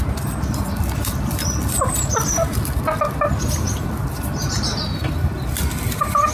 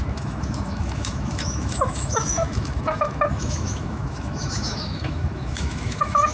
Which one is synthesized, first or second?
second